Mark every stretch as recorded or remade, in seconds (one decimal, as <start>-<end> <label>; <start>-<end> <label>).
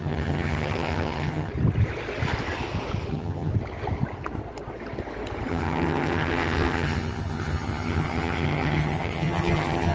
0.0-1.5 remade; 1.5-3.1 recorded; 3.1-3.5 remade; 3.5-5.5 recorded; 5.5-9.9 remade